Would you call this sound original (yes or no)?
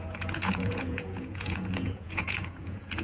no